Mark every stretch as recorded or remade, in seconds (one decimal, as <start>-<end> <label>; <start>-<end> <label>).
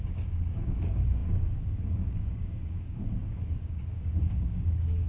0.0-5.1 remade